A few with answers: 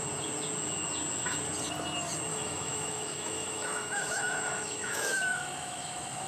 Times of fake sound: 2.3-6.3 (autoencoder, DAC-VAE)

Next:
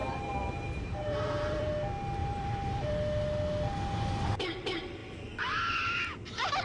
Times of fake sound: 0.0-1.7 (vocoder, BigVGAN v2); 2.2-2.9

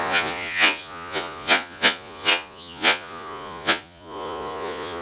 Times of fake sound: 0.0-5.0 (vocoder, Vocos)

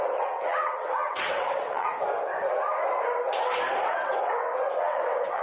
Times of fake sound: 0.0-1.9 (vocoder, WaveNeXt); 3.8-5.4

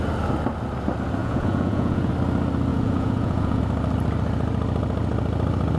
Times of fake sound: 1.2-2.1 (vocoder, Vocos); 2.7-3.6

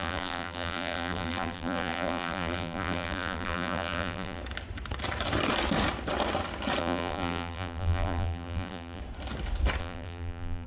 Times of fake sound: 0.0-4.4 (vocoder, BigVGAN v2); 6.8-9.0; 9.8-10.7

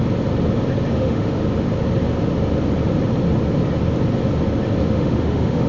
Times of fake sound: 0.9-1.4 (autoencoder, DAC-VAE); 4.8-5.7